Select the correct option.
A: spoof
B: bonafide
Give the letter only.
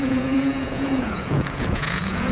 A